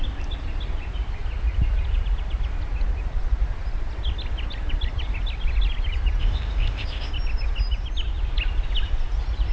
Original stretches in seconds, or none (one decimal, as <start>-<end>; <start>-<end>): 0.0-6.2; 7.1-9.5